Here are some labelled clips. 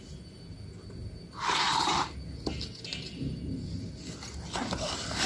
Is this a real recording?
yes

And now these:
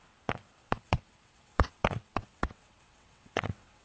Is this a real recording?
no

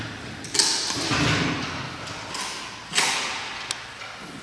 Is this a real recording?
yes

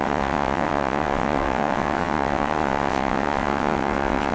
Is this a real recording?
no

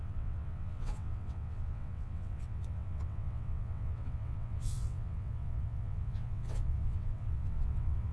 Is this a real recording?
no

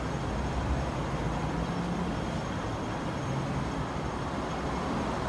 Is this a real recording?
yes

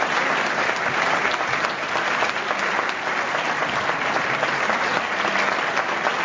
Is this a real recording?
yes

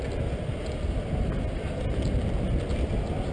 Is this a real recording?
yes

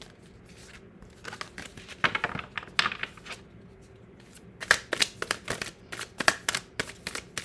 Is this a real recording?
yes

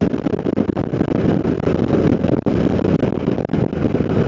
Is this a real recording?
yes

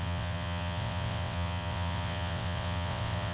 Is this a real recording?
no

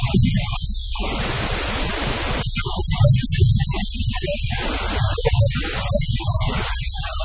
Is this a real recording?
yes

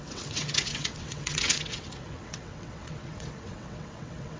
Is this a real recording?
no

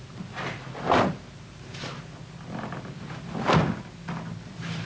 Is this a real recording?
yes